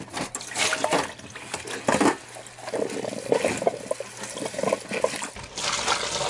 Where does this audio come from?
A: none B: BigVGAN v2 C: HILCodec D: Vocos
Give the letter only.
A